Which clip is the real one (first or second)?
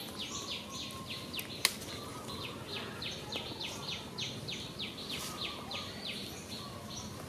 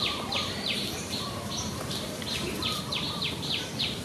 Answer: first